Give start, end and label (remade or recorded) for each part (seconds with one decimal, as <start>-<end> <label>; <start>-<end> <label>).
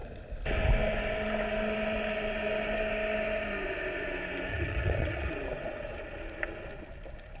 0.0-4.5 recorded; 4.5-5.3 remade; 5.3-7.4 recorded